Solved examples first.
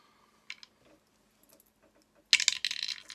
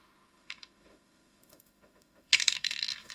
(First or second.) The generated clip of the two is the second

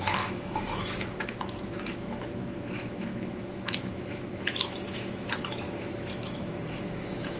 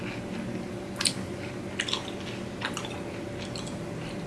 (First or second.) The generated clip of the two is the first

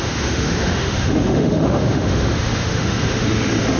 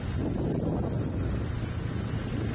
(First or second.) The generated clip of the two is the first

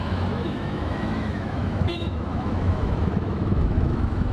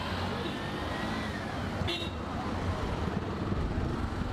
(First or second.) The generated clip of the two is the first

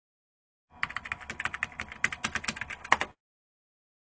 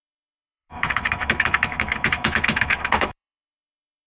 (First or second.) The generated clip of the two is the second